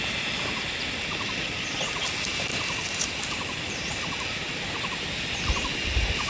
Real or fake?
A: fake